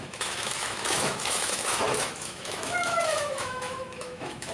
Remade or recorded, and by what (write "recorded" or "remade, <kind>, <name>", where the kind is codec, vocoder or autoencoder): remade, autoencoder, DAC-VAE